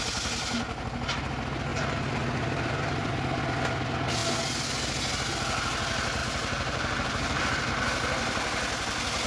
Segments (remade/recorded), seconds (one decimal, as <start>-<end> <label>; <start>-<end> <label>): 0.0-1.7 recorded; 1.7-3.4 remade; 3.4-6.2 recorded; 6.2-7.7 remade; 7.7-9.3 recorded